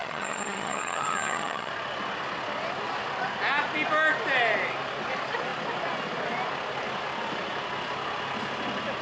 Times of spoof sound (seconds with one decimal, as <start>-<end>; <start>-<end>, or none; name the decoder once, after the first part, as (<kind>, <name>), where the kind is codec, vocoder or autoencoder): 0.0-1.7 (vocoder, HiFi-GAN)